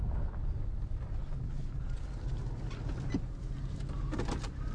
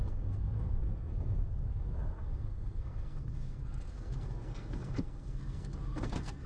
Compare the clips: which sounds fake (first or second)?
second